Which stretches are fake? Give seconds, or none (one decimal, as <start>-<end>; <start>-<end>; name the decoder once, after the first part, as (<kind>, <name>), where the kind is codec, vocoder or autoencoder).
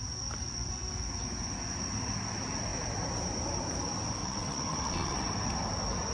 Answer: 4.2-5.2 (vocoder, WaveNeXt)